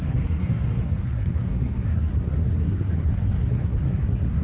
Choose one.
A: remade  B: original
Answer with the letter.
A